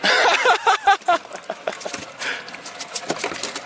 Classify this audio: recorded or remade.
recorded